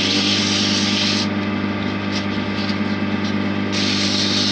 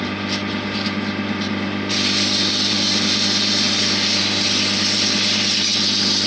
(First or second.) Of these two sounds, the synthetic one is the second